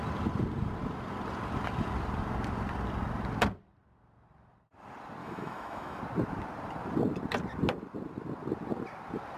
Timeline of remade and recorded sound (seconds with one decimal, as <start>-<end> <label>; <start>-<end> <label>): 0.0-5.2 recorded; 5.2-6.0 remade; 6.0-9.4 recorded